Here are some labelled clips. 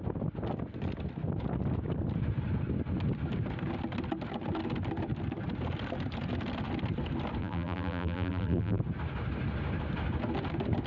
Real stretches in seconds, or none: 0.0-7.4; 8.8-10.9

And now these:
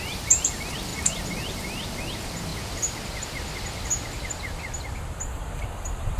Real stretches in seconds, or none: 0.0-2.5; 5.6-6.2

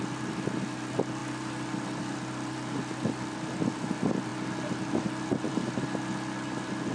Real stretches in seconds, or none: 0.0-6.9

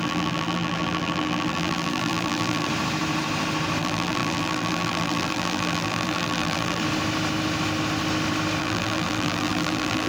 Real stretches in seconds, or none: 2.7-3.8; 6.8-8.6

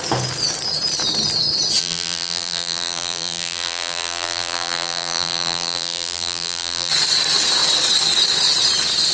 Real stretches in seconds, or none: 0.0-1.8; 6.9-9.1